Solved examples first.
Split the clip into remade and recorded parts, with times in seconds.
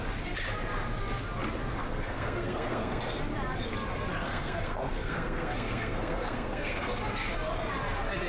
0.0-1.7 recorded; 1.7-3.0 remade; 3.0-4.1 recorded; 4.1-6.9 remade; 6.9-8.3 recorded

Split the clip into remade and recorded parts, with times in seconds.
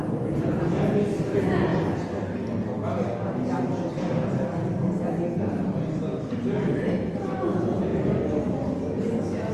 0.0-9.5 recorded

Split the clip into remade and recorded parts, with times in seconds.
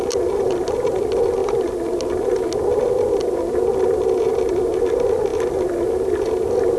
0.0-6.8 recorded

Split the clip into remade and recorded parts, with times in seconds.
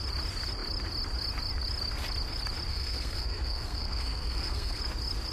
0.0-2.7 recorded; 2.7-4.8 remade; 4.8-5.3 recorded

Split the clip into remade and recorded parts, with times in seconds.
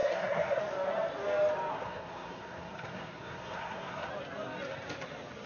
0.0-0.6 remade; 0.6-1.7 recorded; 1.7-4.1 remade; 4.1-5.5 recorded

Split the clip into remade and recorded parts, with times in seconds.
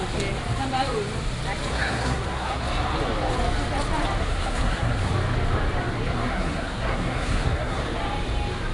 0.0-1.7 recorded; 1.7-2.6 remade; 2.6-4.2 recorded; 4.2-5.1 remade; 5.1-6.3 recorded; 6.3-7.8 remade; 7.8-8.7 recorded